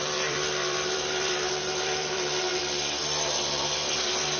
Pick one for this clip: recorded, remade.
remade